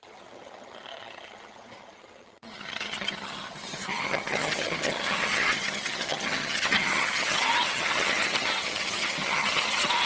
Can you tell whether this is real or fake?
fake